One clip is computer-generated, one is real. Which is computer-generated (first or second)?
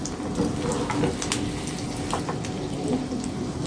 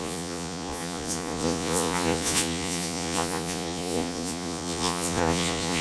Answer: second